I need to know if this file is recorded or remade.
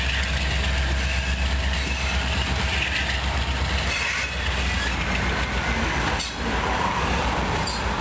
remade